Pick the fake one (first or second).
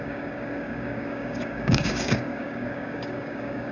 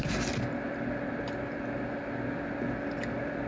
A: first